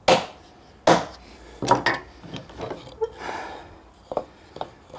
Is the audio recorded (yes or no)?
yes